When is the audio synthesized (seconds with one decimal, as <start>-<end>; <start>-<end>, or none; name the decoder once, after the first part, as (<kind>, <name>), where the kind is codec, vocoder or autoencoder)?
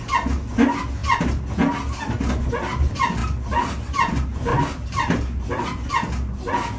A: 4.5-5.9 (vocoder, BigVGAN v2)